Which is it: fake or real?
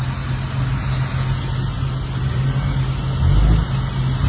real